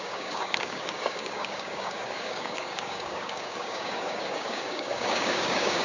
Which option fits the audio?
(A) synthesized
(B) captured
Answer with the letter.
A